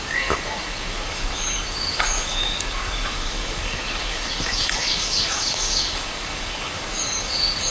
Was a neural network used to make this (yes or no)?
yes